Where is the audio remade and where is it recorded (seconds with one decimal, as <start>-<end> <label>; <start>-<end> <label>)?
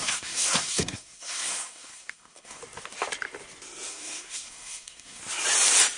0.0-2.6 remade; 2.6-3.9 recorded; 3.9-5.2 remade; 5.2-6.0 recorded